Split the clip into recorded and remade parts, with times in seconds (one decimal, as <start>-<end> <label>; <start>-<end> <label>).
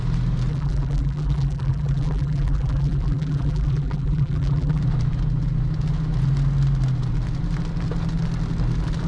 0.0-0.5 recorded; 0.5-4.8 remade; 4.8-9.1 recorded